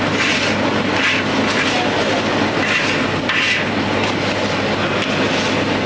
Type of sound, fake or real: real